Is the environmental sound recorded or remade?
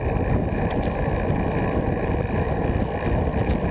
recorded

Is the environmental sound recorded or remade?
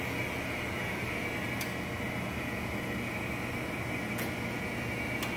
recorded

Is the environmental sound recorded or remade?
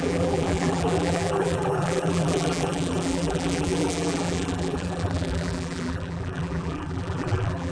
remade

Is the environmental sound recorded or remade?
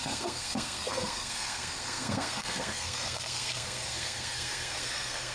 remade